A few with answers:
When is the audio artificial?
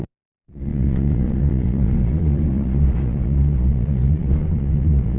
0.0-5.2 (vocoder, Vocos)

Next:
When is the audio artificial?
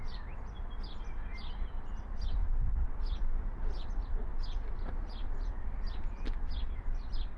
none